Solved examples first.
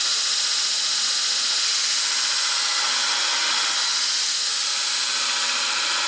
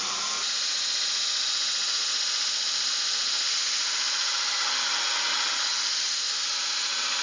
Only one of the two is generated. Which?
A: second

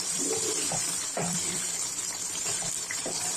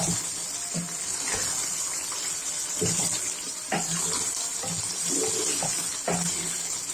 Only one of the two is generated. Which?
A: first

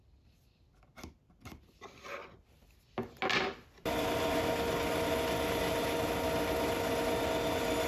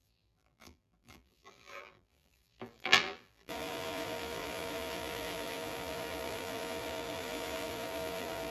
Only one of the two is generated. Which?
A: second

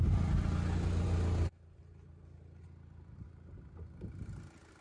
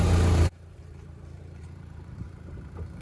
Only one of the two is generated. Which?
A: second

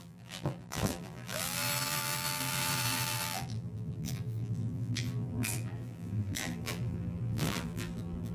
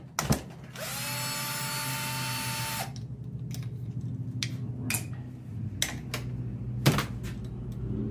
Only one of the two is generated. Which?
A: first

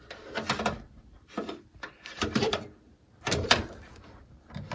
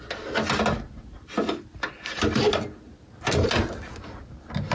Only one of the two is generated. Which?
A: first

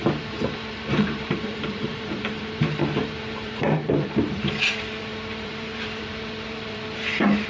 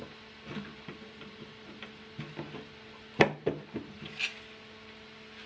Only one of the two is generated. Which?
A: first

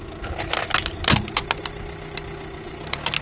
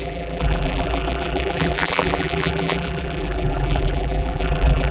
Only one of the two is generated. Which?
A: second